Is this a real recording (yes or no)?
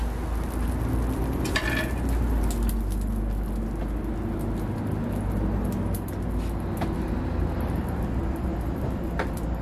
yes